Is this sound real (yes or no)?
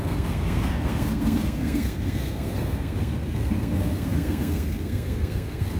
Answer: no